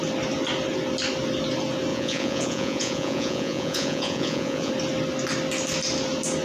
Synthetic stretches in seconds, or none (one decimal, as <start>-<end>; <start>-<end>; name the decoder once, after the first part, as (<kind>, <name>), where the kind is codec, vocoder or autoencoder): 1.9-4.7 (vocoder, Vocos)

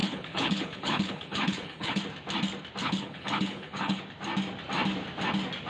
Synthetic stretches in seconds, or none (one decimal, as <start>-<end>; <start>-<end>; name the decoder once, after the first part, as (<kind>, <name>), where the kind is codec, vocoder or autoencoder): 0.0-2.0 (codec, HILCodec); 2.8-4.0

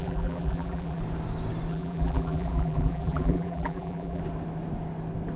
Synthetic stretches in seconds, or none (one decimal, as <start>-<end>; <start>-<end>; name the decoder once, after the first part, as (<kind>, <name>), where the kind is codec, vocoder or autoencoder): 0.0-1.0 (vocoder, BigVGAN v2); 1.7-4.2

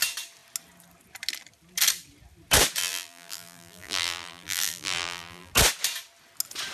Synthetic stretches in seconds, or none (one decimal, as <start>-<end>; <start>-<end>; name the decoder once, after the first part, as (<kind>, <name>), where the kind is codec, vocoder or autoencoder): 2.8-5.5 (vocoder, BigVGAN v2)